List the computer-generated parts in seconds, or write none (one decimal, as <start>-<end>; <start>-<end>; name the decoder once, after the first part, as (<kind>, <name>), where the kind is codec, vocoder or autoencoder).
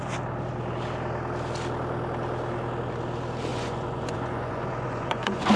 3.5-5.6 (vocoder, Vocos)